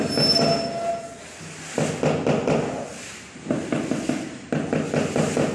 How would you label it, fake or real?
real